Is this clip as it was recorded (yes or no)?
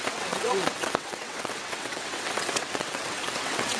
no